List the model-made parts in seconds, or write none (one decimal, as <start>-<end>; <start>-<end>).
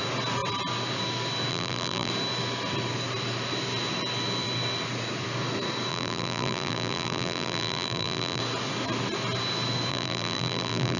1.5-2.1; 5.9-8.4; 9.9-11.0